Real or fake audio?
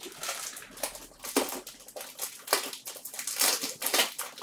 real